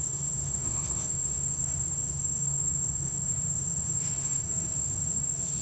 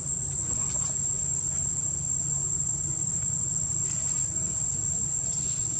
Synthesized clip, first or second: first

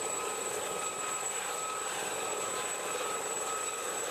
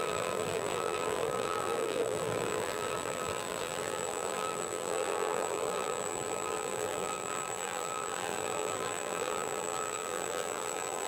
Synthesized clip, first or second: second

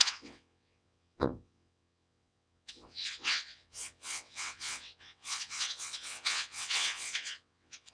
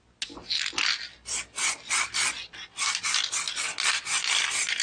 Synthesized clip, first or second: first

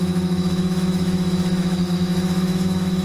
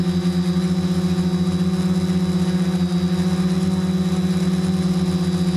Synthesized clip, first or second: first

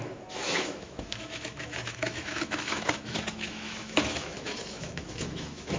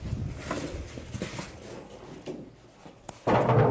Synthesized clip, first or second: first